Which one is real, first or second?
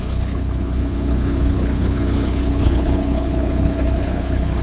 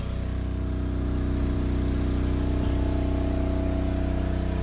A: second